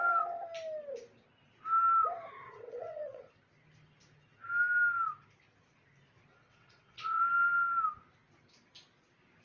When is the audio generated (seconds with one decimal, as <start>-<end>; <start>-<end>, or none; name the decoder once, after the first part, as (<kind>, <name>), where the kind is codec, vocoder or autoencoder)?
2.4-3.3 (vocoder, WaveNeXt); 6.3-7.2

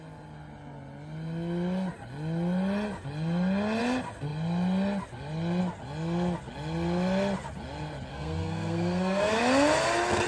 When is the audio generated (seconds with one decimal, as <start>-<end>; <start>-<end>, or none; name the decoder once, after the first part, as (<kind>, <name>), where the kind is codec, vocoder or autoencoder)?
8.1-9.4 (codec, SNAC)

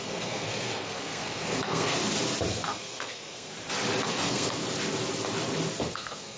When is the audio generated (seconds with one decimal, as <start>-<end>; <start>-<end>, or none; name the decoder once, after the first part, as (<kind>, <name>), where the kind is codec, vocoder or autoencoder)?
0.0-2.0 (codec, SNAC); 2.5-3.5; 4.1-4.6; 5.8-6.4

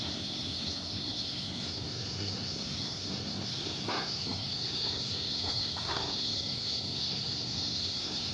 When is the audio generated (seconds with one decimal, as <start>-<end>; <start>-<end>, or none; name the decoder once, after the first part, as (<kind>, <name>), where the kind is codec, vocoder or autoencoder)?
0.0-8.3 (codec, SNAC)